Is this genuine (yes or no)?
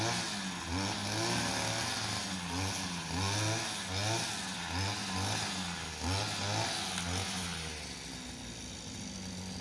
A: yes